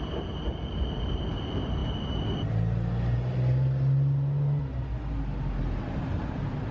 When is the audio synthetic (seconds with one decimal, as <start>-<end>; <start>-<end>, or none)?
none